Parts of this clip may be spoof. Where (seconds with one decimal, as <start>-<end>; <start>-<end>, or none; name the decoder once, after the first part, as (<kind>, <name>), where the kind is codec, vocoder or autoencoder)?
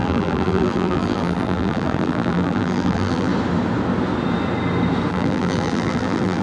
0.0-3.3 (vocoder, BigVGAN v2); 5.1-6.4